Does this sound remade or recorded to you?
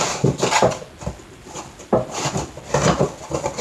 recorded